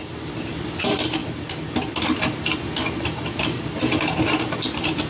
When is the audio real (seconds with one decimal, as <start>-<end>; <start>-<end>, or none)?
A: 0.0-5.1

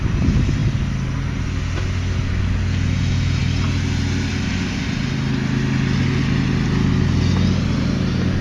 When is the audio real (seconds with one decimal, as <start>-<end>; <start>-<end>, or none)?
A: 0.0-8.4